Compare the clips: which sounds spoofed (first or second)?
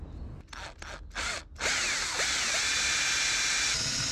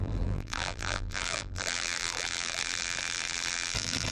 second